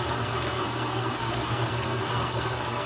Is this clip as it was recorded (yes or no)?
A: no